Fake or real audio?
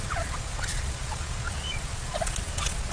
fake